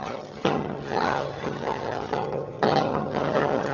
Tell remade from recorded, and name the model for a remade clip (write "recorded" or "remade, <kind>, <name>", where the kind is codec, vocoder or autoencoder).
remade, vocoder, HiFi-GAN